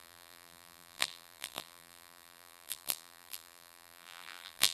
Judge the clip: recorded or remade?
remade